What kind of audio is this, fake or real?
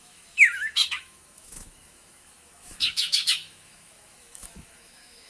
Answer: fake